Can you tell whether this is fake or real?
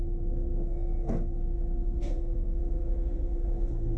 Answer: fake